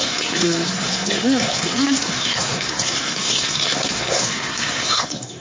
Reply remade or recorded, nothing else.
remade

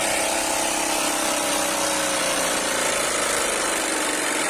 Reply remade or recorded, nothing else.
recorded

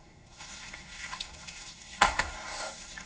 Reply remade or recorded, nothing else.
remade